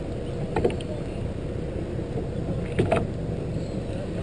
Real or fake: real